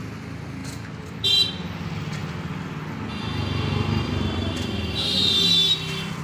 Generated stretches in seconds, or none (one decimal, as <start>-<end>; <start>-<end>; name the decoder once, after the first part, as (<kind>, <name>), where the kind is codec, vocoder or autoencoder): none

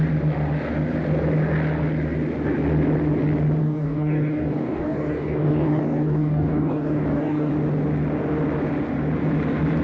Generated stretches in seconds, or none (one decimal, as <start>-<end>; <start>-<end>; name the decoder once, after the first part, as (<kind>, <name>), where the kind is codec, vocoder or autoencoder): 3.6-7.5 (codec, DAC)

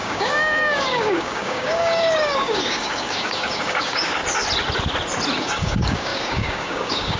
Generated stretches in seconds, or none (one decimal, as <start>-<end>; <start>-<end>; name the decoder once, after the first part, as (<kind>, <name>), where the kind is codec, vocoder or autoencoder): 0.0-4.2 (codec, DAC); 5.4-7.2

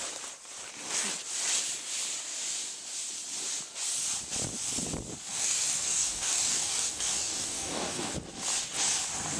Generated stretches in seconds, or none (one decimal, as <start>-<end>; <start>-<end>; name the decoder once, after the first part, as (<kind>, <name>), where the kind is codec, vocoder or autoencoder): 5.3-8.1 (codec, DAC)

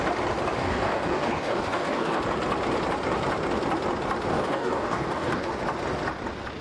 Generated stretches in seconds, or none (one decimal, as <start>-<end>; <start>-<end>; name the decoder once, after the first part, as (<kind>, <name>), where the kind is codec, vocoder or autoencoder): 0.6-2.2 (codec, DAC); 4.3-5.5

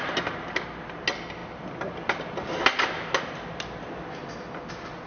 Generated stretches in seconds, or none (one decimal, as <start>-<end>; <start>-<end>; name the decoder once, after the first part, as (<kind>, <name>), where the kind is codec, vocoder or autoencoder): none

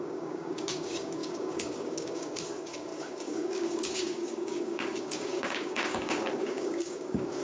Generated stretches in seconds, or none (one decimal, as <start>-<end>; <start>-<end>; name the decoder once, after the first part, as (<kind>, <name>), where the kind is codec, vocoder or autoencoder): 0.0-7.4 (codec, DAC)

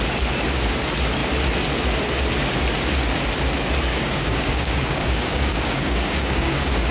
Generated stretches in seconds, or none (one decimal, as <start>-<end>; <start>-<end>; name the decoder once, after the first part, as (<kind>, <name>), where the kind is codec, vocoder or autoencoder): 3.9-6.9 (codec, DAC)